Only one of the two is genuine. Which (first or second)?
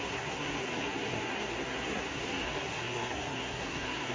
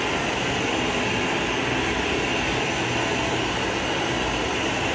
second